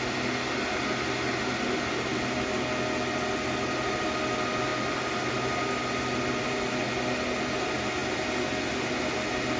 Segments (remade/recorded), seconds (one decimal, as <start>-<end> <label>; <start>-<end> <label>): 0.0-9.6 recorded